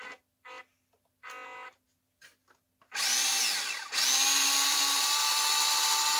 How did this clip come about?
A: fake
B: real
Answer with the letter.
B